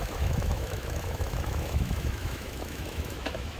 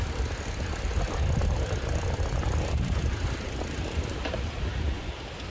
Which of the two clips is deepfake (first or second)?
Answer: first